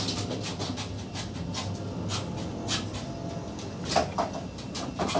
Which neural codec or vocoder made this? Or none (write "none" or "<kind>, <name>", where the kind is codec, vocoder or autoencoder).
none